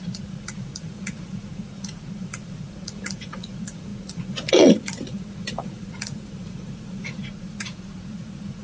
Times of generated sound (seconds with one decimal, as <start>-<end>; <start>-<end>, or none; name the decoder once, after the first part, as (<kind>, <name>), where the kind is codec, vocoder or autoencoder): 0.0-8.6 (vocoder, Vocos)